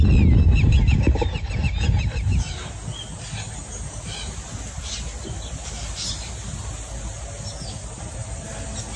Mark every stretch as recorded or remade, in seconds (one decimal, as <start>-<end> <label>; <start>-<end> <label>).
0.0-9.0 recorded